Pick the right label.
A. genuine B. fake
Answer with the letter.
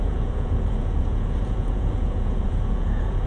B